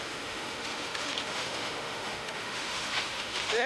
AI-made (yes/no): yes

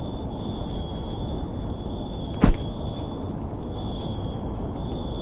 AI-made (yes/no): yes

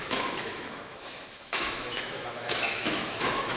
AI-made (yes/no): yes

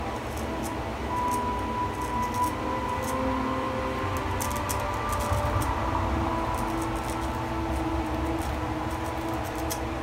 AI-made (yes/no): no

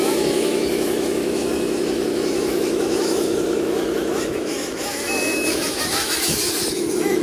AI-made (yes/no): yes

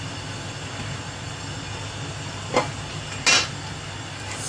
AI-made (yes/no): no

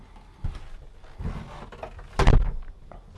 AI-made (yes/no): no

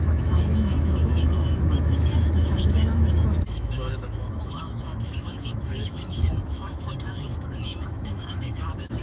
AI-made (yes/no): yes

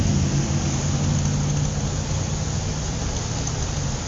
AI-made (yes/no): no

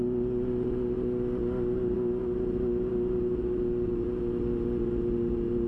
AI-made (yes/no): no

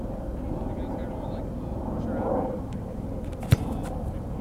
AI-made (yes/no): no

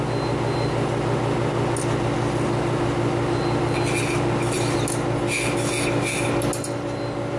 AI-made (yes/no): no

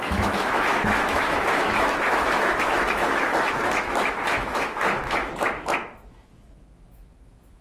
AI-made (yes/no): yes